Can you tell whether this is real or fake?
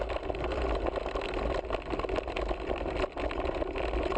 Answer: real